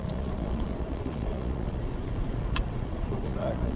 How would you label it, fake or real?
fake